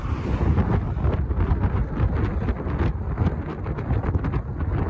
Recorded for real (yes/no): yes